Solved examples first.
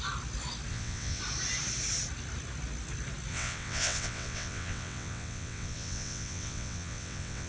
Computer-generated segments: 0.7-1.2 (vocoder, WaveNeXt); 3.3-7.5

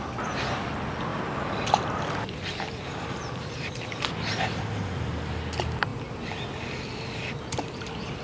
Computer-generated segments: none